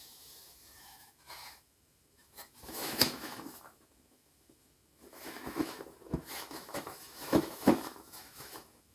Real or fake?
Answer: fake